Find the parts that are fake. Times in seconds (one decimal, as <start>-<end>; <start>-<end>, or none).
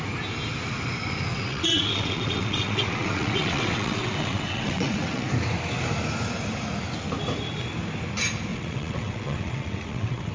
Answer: 1.3-5.3; 8.5-10.3